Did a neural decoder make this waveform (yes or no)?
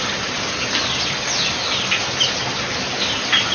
no